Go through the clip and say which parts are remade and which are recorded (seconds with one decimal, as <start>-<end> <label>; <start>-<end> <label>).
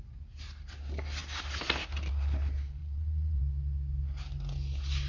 0.0-2.8 recorded; 2.8-3.4 remade; 3.4-5.1 recorded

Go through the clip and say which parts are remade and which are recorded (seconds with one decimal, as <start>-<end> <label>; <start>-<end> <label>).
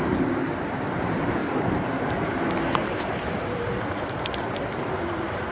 0.0-5.5 remade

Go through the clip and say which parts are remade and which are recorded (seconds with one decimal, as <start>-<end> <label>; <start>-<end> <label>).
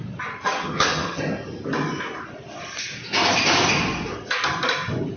0.0-0.5 recorded; 0.5-1.2 remade; 1.2-5.2 recorded